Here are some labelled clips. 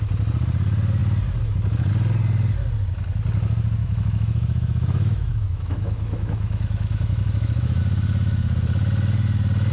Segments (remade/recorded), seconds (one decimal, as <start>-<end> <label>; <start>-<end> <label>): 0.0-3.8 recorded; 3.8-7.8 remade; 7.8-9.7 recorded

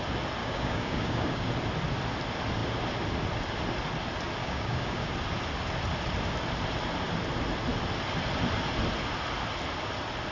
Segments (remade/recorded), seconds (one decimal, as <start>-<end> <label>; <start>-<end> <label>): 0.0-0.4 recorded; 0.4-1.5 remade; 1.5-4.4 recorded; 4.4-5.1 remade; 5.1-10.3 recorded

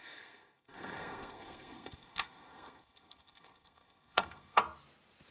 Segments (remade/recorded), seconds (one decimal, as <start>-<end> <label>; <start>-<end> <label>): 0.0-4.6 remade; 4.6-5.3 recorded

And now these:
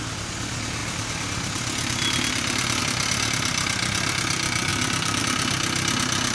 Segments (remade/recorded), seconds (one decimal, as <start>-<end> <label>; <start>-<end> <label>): 0.0-4.7 recorded; 4.7-5.2 remade; 5.2-6.3 recorded